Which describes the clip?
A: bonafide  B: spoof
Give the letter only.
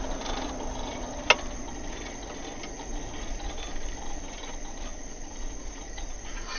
A